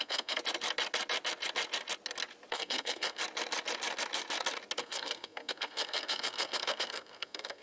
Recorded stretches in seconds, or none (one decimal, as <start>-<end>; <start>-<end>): 0.4-2.5; 3.2-4.8